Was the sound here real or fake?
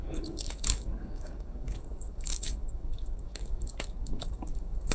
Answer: fake